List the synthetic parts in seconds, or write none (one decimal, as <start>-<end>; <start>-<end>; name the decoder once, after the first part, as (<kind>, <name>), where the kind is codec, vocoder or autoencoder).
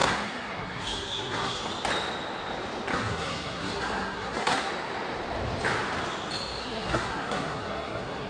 0.0-1.6 (codec, SNAC); 2.9-4.7; 6.6-8.3